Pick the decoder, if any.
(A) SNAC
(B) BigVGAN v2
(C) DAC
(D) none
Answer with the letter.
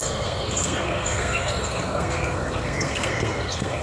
A